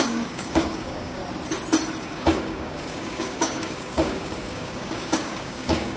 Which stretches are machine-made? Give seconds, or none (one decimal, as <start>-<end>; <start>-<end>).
0.0-1.2; 2.0-6.0

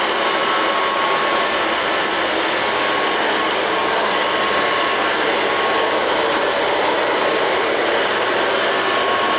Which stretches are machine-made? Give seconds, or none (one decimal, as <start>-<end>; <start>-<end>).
none

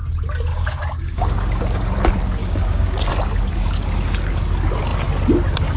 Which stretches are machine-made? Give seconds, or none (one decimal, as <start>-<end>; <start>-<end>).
0.5-1.6; 2.4-3.1

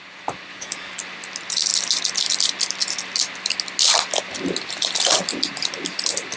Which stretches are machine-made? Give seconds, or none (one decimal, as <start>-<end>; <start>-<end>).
0.5-1.0

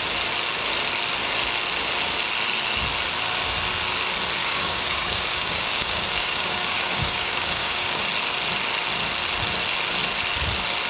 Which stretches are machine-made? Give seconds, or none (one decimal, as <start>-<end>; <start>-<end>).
4.4-8.0

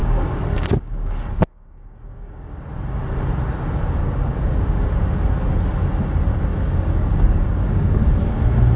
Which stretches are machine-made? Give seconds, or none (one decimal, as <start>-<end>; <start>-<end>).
0.0-2.6; 4.0-4.8; 6.5-8.0

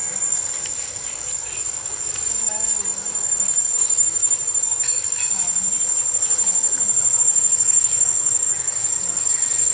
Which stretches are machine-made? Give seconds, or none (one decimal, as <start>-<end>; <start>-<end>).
0.0-5.2; 7.2-9.7

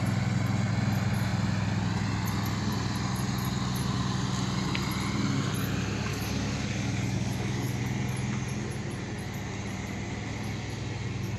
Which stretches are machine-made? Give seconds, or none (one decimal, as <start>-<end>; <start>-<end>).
6.1-7.8